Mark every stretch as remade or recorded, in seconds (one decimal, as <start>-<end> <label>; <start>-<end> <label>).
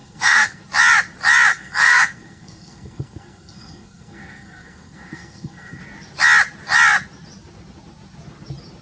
0.0-0.6 remade; 0.6-1.5 recorded; 1.5-5.8 remade; 5.8-8.8 recorded